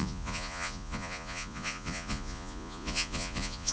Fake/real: fake